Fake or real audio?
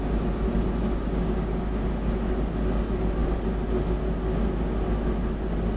real